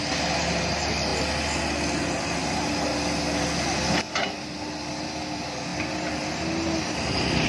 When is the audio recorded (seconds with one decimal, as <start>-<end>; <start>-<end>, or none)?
0.0-7.5